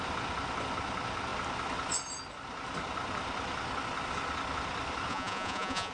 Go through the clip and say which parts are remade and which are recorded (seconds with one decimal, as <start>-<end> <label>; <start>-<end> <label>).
0.0-5.1 recorded; 5.1-5.9 remade